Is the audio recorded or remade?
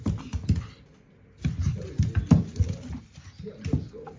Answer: recorded